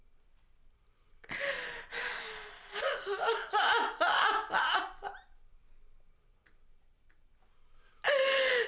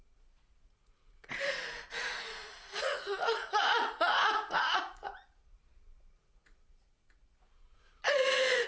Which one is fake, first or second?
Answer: second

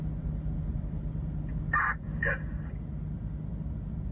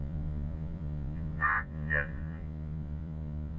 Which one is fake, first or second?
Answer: second